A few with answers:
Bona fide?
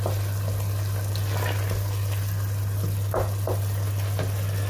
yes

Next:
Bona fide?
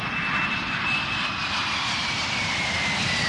yes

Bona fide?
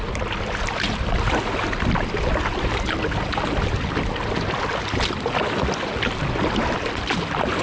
yes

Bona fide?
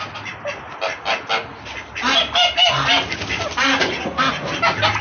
yes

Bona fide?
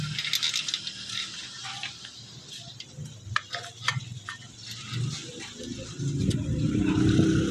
yes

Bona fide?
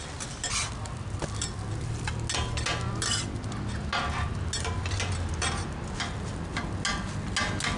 yes